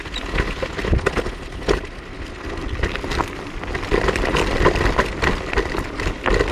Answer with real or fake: real